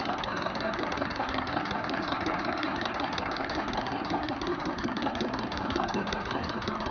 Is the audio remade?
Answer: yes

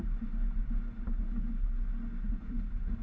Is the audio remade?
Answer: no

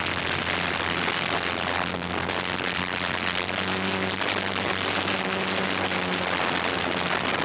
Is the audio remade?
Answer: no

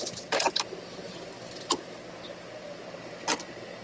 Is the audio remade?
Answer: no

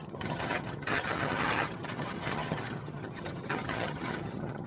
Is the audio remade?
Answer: yes